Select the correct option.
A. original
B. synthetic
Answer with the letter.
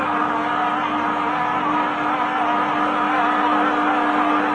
A